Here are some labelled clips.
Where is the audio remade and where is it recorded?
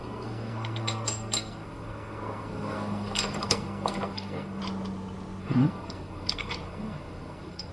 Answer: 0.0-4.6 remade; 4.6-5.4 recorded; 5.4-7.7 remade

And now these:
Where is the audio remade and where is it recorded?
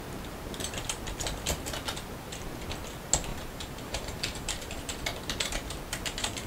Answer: 0.0-3.3 recorded; 3.3-4.8 remade; 4.8-6.5 recorded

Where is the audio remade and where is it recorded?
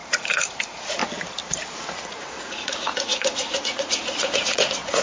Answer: 0.0-1.0 remade; 1.0-2.1 recorded; 2.1-5.0 remade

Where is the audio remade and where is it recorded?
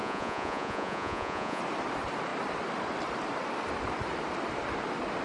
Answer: 0.0-1.6 remade; 1.6-5.2 recorded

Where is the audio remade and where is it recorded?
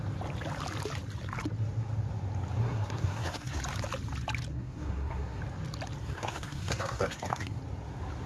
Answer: 0.0-2.6 recorded; 2.6-3.6 remade; 3.6-4.5 recorded; 4.5-5.4 remade; 5.4-6.0 recorded; 6.0-7.6 remade; 7.6-8.3 recorded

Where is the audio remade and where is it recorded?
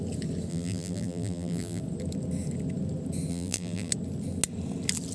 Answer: 0.0-0.5 recorded; 0.5-1.8 remade; 1.8-3.3 recorded; 3.3-3.9 remade; 3.9-5.1 recorded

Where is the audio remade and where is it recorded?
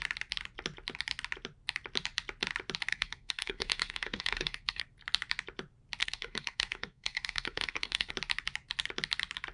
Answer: 0.0-2.9 recorded; 2.9-4.8 remade; 4.8-6.0 recorded; 6.0-8.1 remade; 8.1-9.5 recorded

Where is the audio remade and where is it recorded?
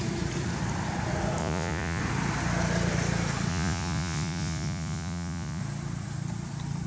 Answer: 0.0-1.4 recorded; 1.4-2.0 remade; 2.0-3.5 recorded; 3.5-5.6 remade; 5.6-6.9 recorded